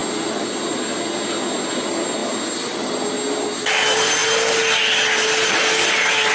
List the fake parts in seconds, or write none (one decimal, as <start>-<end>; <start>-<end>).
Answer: none